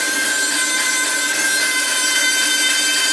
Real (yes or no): yes